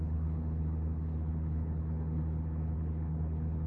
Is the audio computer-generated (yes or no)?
yes